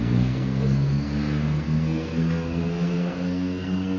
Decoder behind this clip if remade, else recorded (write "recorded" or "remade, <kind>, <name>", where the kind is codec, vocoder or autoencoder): remade, codec, SNAC